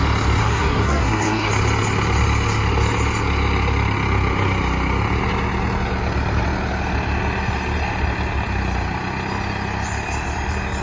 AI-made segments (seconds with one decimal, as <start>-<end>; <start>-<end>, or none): 0.4-1.5